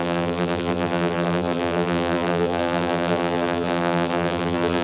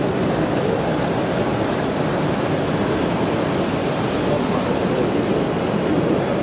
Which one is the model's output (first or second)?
first